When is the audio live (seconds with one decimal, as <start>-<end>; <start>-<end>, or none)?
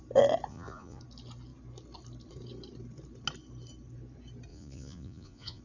0.0-0.5; 1.0-4.5